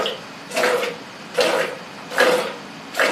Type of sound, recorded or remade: recorded